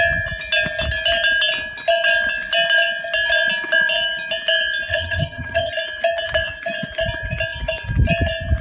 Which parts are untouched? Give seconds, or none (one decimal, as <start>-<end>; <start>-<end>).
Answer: 0.0-4.9; 5.7-8.6